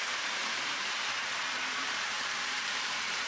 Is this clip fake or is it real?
fake